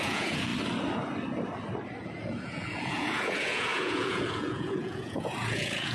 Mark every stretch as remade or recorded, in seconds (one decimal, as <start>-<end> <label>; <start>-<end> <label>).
0.0-0.5 remade; 0.5-2.0 recorded; 2.0-5.9 remade